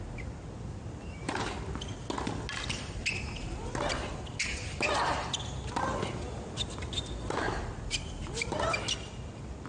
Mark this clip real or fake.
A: real